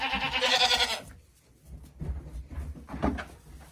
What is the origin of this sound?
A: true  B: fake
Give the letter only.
A